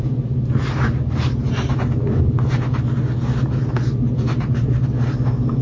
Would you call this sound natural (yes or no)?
yes